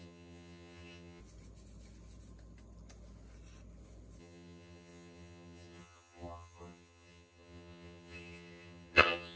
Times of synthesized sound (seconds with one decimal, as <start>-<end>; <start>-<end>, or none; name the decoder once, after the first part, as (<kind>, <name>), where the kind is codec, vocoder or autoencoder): 0.0-1.2 (vocoder, HiFi-GAN); 4.2-9.4